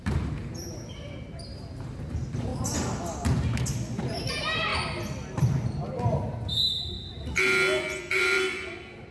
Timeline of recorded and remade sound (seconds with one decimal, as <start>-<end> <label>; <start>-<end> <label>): 0.0-2.5 remade; 2.5-4.3 recorded; 4.3-4.7 remade; 4.7-8.2 recorded; 8.2-9.1 remade